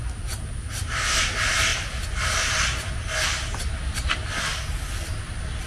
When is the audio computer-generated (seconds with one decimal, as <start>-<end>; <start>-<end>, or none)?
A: none